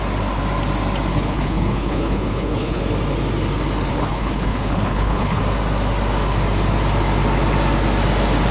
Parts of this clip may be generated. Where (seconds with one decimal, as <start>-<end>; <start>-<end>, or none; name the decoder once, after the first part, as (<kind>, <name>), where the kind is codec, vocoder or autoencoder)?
1.1-2.8 (codec, HILCodec); 3.9-5.4